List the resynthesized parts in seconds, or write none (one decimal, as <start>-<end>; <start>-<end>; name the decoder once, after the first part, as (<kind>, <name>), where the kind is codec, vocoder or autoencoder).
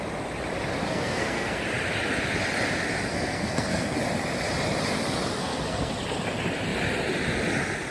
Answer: 0.8-1.6 (codec, SNAC); 3.1-4.0; 5.4-5.9